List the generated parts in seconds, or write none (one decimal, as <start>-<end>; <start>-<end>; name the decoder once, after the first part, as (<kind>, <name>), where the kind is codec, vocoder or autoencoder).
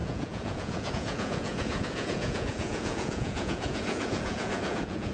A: 0.0-5.1 (vocoder, Vocos)